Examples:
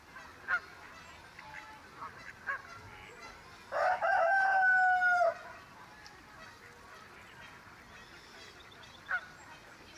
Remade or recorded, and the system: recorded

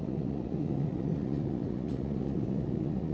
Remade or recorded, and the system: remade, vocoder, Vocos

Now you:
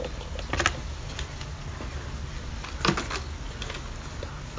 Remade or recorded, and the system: recorded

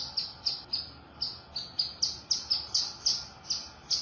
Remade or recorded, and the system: recorded